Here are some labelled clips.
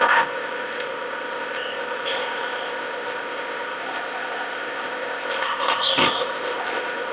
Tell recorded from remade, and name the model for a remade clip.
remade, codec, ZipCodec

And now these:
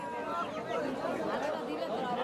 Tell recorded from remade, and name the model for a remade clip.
recorded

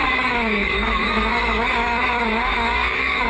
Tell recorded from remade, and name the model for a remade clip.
remade, codec, DAC